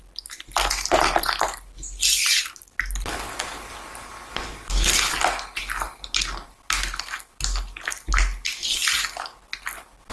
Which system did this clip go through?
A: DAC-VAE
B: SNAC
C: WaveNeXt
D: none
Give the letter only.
D